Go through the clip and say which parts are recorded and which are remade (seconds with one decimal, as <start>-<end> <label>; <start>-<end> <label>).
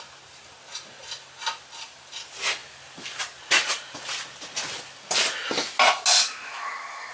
0.0-6.2 recorded; 6.2-7.1 remade